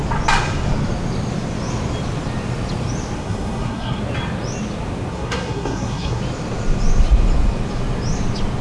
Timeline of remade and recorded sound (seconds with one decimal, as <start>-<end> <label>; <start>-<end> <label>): 0.0-3.2 recorded; 3.2-4.0 remade; 4.0-5.1 recorded; 5.1-6.2 remade; 6.2-8.6 recorded